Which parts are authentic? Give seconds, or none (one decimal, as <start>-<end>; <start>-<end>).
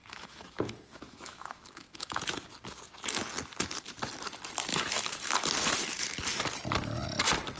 2.2-4.7; 5.3-7.6